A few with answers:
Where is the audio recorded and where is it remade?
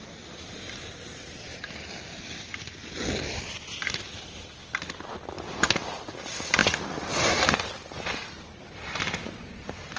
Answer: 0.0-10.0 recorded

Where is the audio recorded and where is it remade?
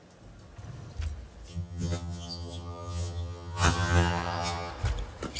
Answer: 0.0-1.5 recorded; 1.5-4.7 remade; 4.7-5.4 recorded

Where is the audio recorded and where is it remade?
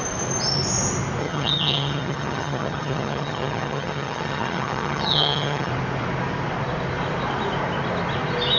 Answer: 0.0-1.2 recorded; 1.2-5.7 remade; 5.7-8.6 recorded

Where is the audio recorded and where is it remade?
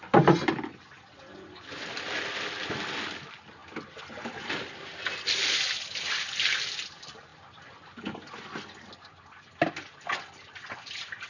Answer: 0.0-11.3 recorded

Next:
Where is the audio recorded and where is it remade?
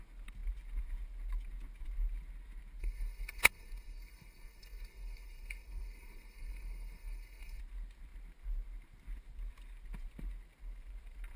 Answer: 0.0-2.8 recorded; 2.8-7.6 remade; 7.6-11.4 recorded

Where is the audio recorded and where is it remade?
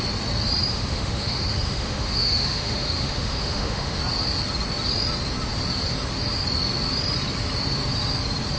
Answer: 0.0-0.7 recorded; 0.7-4.0 remade; 4.0-8.6 recorded